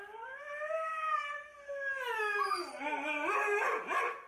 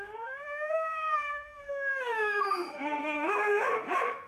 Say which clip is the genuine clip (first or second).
first